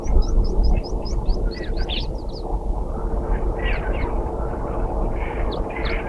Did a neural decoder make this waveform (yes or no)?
yes